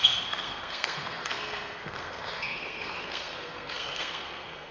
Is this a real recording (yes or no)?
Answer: no